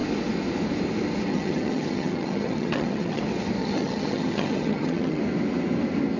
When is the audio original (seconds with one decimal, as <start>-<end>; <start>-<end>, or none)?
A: 0.0-1.3; 3.2-3.6; 5.2-6.2

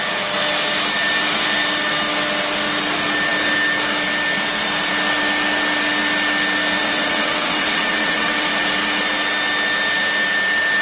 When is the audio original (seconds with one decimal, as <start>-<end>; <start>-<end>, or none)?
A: 0.0-6.8; 8.5-10.8

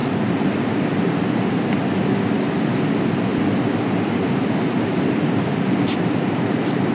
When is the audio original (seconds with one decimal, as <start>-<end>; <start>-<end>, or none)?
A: 0.0-6.9

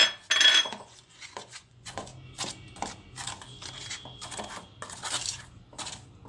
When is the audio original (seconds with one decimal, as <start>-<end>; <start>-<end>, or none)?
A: 0.0-0.5; 2.1-6.3

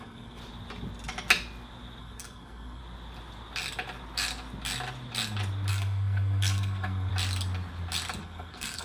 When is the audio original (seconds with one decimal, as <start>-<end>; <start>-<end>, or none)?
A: 0.4-2.0; 2.8-5.7; 7.1-8.2